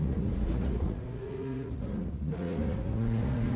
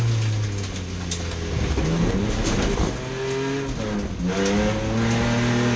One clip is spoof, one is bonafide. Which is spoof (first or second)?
first